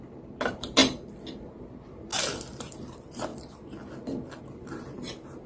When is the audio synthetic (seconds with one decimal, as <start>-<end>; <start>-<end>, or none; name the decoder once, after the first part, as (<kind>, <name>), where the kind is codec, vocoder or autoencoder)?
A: 0.0-0.8 (vocoder, BigVGAN v2); 1.4-2.1; 2.6-3.3; 4.4-5.5